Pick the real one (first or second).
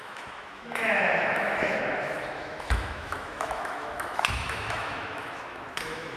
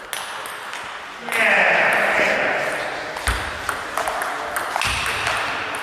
second